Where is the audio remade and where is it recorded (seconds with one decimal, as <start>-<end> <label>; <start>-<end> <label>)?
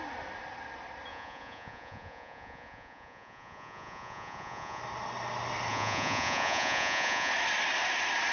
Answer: 0.0-1.1 recorded; 1.1-4.8 remade; 4.8-5.7 recorded; 5.7-7.3 remade; 7.3-8.3 recorded